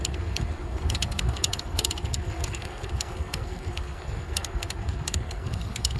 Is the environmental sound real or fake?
fake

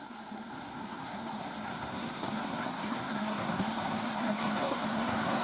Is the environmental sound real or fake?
fake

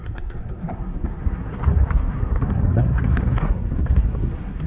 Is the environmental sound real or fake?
fake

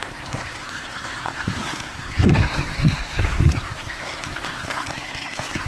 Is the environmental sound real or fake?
fake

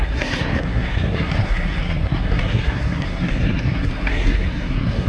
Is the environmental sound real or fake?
fake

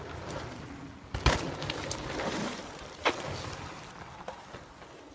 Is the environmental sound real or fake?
real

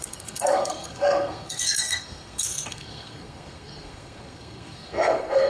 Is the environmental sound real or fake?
fake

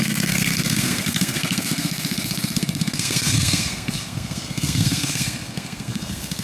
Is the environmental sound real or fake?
fake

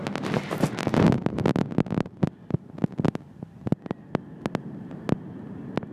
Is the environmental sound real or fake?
real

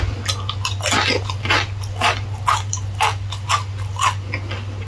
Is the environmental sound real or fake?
real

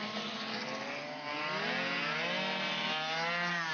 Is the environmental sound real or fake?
real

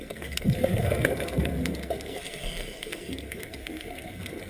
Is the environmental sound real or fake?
fake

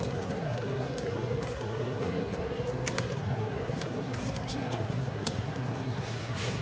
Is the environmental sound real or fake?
fake